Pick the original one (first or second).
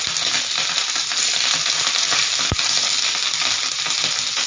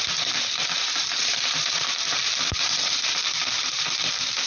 first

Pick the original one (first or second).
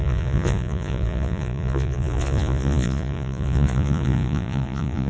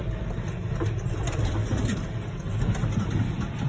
second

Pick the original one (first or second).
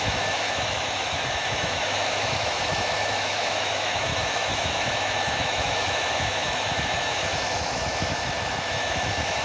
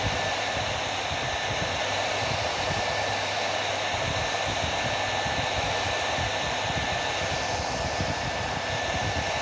second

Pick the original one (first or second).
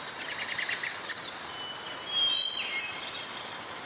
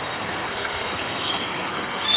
first